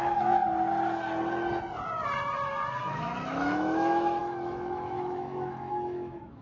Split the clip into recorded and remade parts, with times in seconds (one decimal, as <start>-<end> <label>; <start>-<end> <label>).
0.0-0.4 remade; 0.4-2.8 recorded; 2.8-6.4 remade